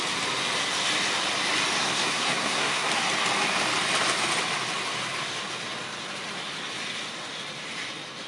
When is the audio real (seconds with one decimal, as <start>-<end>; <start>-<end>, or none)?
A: 0.0-1.8; 2.9-8.3